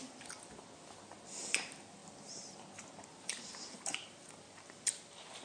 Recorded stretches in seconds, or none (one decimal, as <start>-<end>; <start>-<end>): 0.0-5.4